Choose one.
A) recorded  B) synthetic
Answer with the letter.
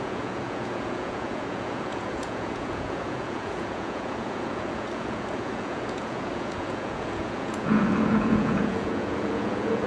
B